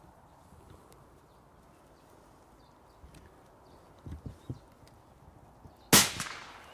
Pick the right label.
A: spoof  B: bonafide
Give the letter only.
B